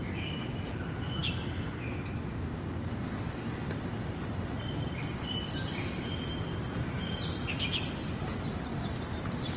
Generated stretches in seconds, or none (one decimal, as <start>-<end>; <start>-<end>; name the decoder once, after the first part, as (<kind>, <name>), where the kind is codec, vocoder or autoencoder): none